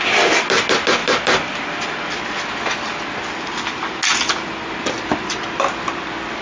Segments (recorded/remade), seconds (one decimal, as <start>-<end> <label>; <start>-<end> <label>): 0.0-6.4 recorded